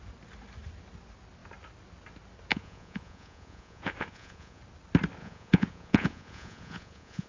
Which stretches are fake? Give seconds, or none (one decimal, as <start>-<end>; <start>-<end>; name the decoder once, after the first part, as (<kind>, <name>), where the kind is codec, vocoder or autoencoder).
2.5-4.6 (vocoder, Vocos); 5.2-7.3